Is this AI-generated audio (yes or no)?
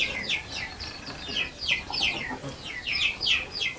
yes